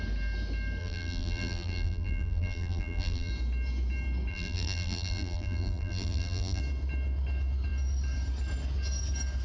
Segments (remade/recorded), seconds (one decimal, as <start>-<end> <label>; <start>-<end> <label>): 0.0-0.8 recorded; 0.8-3.3 remade; 3.3-4.3 recorded; 4.3-6.6 remade; 6.6-9.4 recorded